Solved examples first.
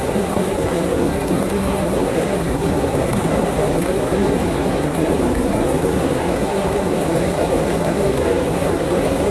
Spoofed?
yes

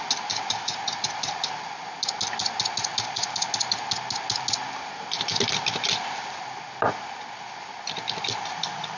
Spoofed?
no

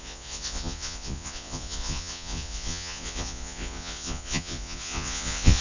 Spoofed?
yes